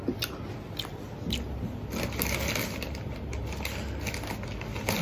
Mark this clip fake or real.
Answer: real